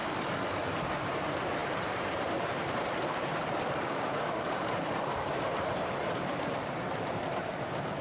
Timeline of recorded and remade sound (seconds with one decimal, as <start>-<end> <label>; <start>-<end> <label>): 0.0-0.7 recorded; 0.7-8.0 remade